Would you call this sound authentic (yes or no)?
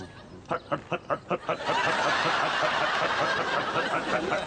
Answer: yes